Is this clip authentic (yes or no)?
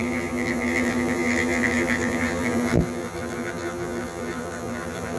no